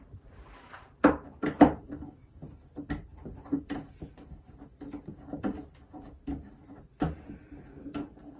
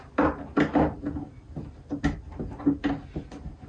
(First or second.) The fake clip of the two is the first